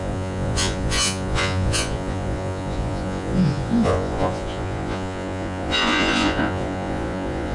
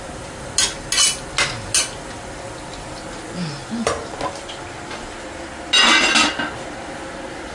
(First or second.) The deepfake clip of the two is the first